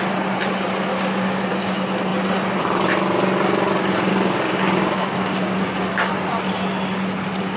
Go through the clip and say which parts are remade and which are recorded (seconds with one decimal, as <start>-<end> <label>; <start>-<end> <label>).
0.0-0.9 recorded; 0.9-1.5 remade; 1.5-4.1 recorded; 4.1-6.1 remade; 6.1-7.6 recorded